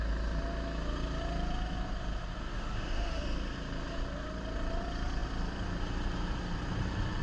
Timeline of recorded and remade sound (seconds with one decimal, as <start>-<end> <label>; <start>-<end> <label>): 0.0-2.4 recorded; 2.4-3.2 remade; 3.2-7.2 recorded